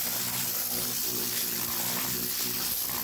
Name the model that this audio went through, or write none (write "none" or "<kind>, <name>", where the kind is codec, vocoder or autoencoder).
none